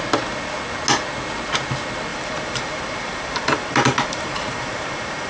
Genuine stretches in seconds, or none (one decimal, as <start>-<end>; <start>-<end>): 0.0-2.1